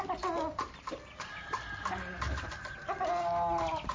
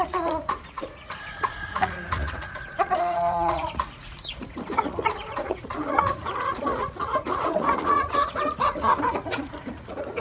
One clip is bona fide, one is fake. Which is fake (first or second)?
second